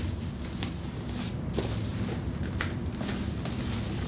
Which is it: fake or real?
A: real